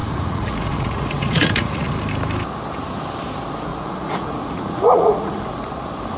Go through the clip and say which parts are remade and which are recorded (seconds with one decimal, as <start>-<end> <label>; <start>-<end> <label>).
0.0-1.9 remade; 1.9-3.7 recorded; 3.7-5.5 remade; 5.5-6.2 recorded